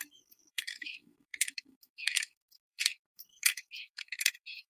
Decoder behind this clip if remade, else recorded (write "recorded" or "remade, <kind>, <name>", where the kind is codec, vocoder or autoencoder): remade, codec, SNAC